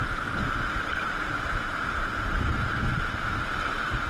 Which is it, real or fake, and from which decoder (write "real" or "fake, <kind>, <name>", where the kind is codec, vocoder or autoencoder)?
real